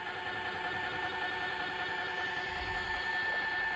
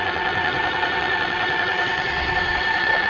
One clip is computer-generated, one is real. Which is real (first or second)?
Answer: first